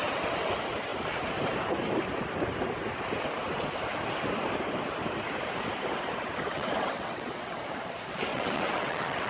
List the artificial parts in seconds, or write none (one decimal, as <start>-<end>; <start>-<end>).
6.5-7.6; 8.3-9.3

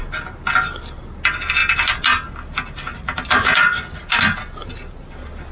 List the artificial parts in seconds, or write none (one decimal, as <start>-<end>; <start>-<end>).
none

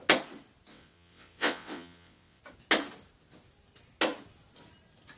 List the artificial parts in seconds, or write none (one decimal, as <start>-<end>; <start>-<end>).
0.7-2.4